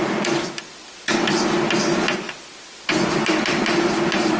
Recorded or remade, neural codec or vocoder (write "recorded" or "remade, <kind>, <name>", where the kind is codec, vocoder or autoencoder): recorded